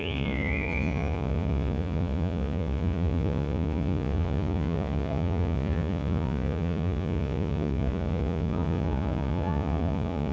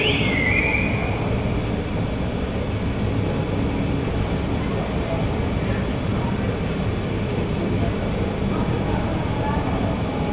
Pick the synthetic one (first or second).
first